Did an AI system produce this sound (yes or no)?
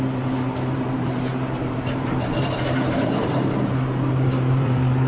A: yes